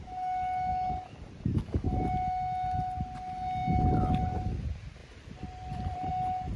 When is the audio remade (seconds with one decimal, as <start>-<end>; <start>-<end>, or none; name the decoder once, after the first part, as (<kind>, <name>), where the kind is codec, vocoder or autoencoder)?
5.0-6.1 (vocoder, BigVGAN v2)